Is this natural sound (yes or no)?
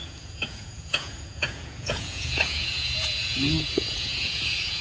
no